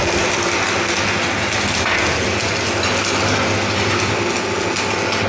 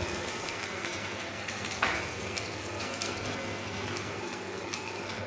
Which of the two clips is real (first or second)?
first